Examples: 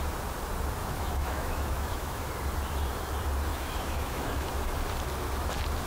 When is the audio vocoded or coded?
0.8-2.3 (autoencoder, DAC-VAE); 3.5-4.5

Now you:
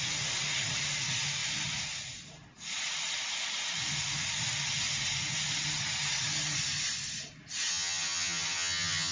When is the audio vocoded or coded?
7.7-9.1 (vocoder, HiFi-GAN)

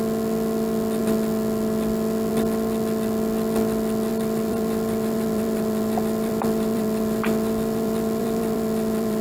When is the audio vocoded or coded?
4.1-9.2 (vocoder, BigVGAN v2)